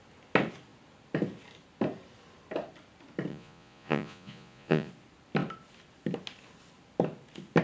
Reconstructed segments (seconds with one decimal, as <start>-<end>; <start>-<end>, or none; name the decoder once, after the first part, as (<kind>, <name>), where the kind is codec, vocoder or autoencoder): 3.3-4.9 (vocoder, Vocos)